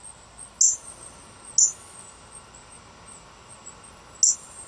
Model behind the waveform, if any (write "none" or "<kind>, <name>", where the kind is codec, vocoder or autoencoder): none